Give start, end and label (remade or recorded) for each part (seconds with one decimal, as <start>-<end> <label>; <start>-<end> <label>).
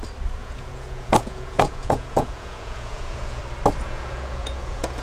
0.0-0.4 recorded; 0.4-3.4 remade; 3.4-3.8 recorded; 3.8-5.0 remade